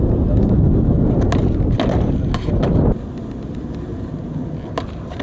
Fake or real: real